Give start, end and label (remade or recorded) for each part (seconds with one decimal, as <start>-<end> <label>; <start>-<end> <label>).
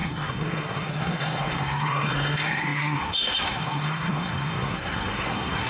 0.0-5.7 remade